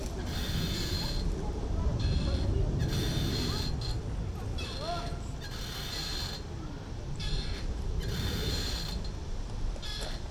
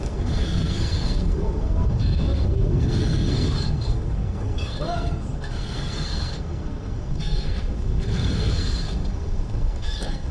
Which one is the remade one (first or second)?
second